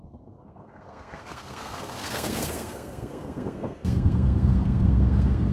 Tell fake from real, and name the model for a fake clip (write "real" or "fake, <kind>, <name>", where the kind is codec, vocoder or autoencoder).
fake, codec, SNAC